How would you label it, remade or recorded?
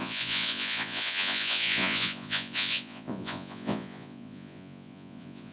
remade